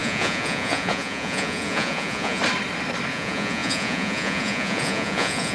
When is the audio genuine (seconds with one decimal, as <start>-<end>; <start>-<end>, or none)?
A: 2.4-3.1